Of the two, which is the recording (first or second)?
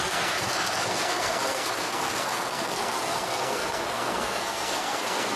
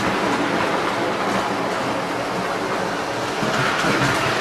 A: second